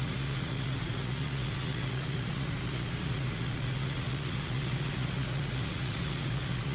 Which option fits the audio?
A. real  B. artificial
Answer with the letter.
B